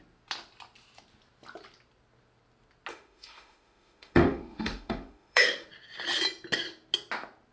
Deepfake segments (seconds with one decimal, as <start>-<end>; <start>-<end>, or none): 2.9-5.7

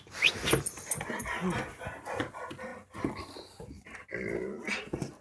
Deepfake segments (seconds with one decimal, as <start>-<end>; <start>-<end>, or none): none

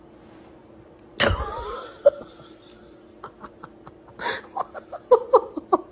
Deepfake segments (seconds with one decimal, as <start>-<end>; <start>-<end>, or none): none

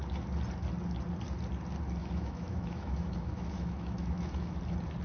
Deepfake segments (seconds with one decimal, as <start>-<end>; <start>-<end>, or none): 2.0-4.6

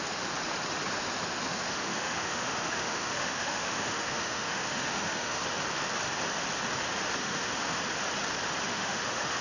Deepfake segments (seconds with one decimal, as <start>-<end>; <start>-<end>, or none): 1.5-5.4; 7.2-7.8; 8.7-9.4

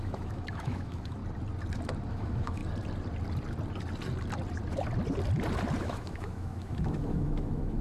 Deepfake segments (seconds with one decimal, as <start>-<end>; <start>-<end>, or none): 0.0-1.2; 2.1-2.6; 5.8-7.8

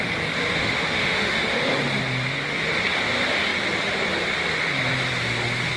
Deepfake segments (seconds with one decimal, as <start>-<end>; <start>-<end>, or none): 0.6-1.6